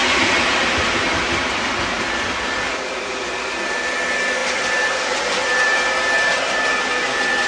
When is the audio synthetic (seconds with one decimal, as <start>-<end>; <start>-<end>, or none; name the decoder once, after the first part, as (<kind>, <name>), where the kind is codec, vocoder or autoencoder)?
0.0-1.0 (vocoder, BigVGAN v2); 4.4-6.5